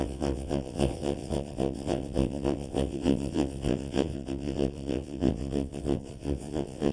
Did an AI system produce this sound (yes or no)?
yes